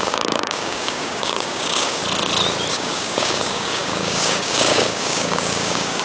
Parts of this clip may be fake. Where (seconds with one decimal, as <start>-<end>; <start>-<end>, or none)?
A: 0.0-2.0; 2.7-6.0

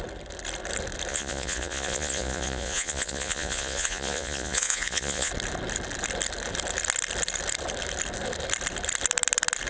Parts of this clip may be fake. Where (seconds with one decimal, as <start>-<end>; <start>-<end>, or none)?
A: 1.1-5.3

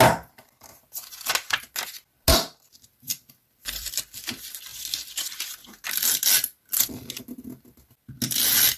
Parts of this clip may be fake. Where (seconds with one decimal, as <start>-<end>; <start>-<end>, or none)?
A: 0.7-1.3; 2.3-4.0

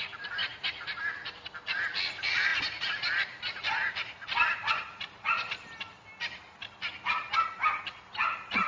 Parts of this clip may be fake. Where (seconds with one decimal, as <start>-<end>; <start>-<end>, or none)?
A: none

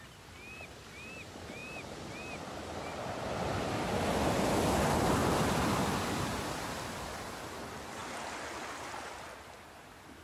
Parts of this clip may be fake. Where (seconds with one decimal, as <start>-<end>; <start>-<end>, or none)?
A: 5.2-6.5

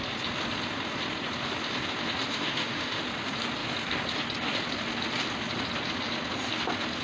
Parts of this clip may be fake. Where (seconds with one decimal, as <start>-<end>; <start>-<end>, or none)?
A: 2.3-3.0